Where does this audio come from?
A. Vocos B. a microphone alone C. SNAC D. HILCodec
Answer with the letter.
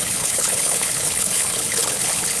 D